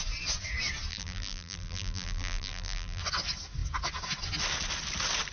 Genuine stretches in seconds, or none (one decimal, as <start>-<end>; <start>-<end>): 0.0-0.9; 3.0-5.3